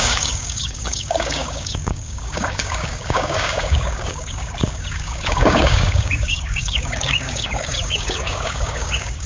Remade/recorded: remade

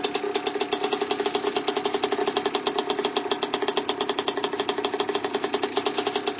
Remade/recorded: recorded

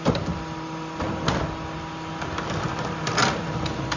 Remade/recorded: recorded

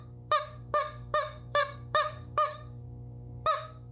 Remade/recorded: remade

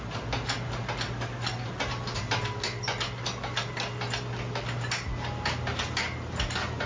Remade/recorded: recorded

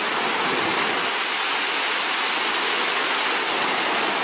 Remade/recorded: recorded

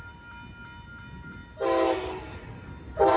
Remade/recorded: recorded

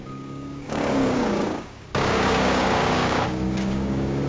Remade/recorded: remade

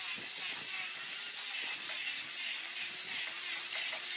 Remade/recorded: recorded